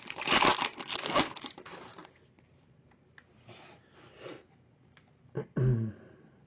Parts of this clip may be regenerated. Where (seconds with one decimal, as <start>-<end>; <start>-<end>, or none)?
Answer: 0.0-0.5; 1.1-2.0; 5.9-6.5